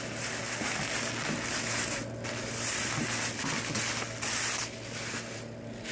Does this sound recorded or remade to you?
recorded